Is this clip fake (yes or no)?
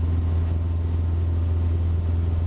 no